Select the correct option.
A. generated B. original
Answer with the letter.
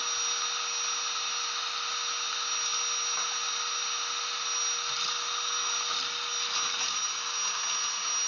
B